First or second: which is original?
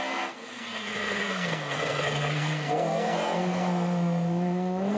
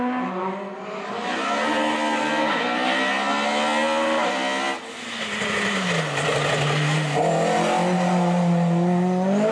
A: second